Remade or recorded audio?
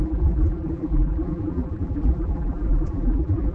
remade